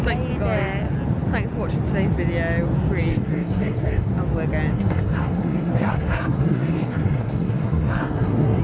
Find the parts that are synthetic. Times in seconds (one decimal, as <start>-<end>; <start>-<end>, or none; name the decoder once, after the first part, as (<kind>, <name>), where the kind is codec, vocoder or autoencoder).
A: 3.1-4.1 (codec, SNAC); 4.7-8.6